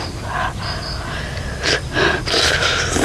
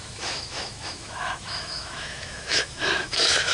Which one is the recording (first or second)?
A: first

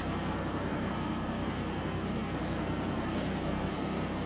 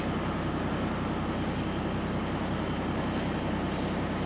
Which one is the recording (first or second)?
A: second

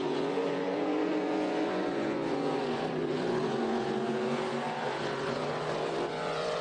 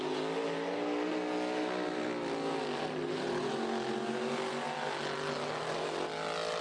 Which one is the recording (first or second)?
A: second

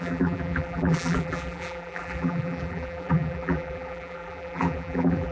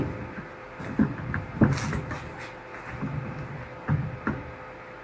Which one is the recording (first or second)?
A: second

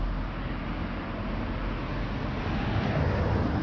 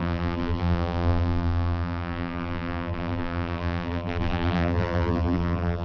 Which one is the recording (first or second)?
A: first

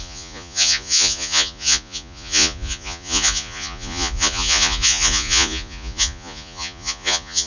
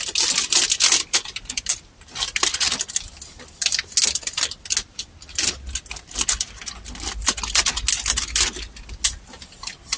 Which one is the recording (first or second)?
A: second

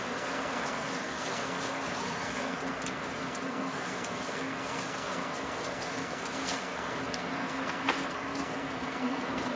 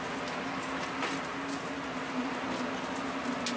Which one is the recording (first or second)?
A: second